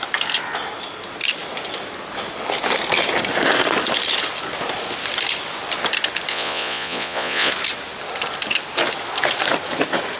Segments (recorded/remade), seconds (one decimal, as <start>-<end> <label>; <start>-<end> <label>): 0.0-6.3 recorded; 6.3-7.5 remade; 7.5-10.2 recorded